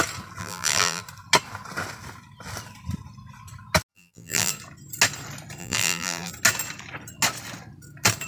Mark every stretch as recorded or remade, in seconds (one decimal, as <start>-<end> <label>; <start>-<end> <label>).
0.0-0.4 recorded; 0.4-1.0 remade; 1.0-3.9 recorded; 3.9-4.5 remade; 4.5-5.6 recorded; 5.6-6.3 remade; 6.3-8.3 recorded